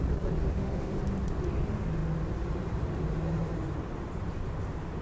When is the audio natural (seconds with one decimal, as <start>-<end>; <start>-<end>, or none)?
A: 0.0-0.4; 1.0-5.0